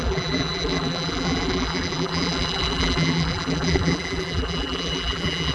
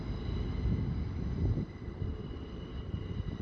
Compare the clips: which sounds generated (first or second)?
first